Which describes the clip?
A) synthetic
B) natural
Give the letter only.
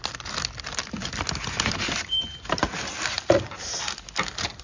B